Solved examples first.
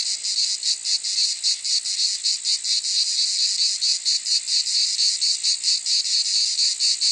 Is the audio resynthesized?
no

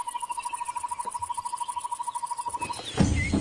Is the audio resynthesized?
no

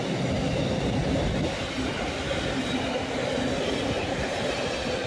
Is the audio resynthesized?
no